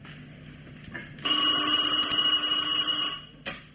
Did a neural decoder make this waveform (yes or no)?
no